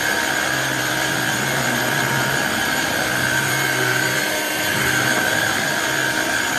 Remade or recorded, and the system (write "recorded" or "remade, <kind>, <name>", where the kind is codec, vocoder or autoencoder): remade, vocoder, BigVGAN v2